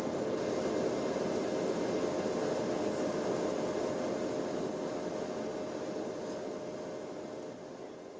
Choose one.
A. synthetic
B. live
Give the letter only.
B